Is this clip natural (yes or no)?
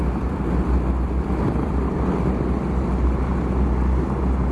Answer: yes